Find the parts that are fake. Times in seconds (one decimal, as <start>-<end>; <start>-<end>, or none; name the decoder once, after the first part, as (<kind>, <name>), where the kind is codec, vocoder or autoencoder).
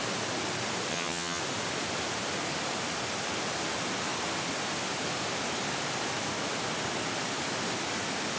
0.9-1.4 (vocoder, HiFi-GAN)